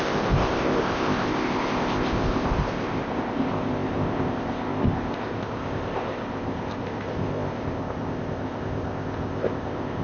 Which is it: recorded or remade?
remade